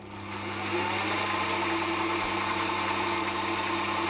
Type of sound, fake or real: real